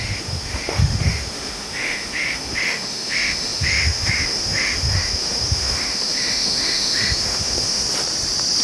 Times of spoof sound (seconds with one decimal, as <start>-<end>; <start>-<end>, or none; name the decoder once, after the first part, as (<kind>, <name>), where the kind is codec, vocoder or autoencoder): 0.0-7.8 (autoencoder, DAC-VAE)